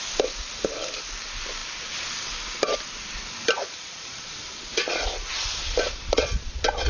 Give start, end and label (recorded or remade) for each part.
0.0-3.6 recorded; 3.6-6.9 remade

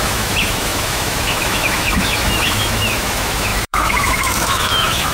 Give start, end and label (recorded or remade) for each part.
0.0-5.1 remade

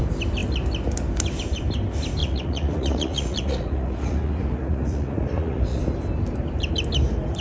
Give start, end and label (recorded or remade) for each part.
0.0-2.2 recorded; 2.2-5.8 remade; 5.8-7.4 recorded

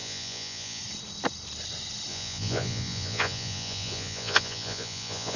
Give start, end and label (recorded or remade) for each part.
0.0-0.8 remade; 0.8-2.1 recorded; 2.1-5.4 remade

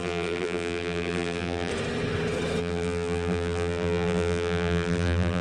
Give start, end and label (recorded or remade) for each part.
0.0-1.7 remade; 1.7-2.6 recorded; 2.6-5.4 remade

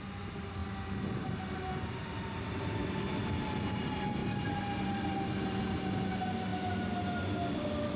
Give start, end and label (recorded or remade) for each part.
0.0-8.0 recorded

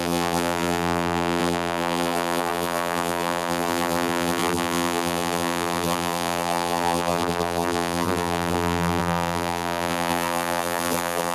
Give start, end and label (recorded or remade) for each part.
0.0-11.3 remade